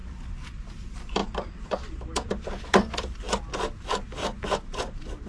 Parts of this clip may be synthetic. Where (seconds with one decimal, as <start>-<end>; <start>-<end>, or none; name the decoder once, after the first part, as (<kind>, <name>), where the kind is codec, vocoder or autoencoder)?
0.0-0.7 (vocoder, BigVGAN v2); 1.2-3.4; 4.2-5.3